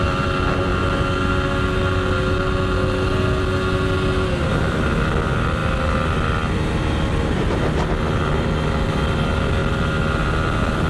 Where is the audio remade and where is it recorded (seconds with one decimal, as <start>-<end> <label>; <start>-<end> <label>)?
0.0-10.9 recorded